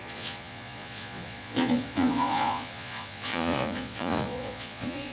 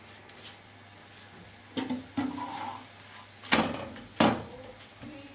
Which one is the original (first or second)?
second